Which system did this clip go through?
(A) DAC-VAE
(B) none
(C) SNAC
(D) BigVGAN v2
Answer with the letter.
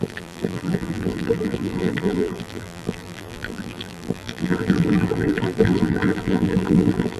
D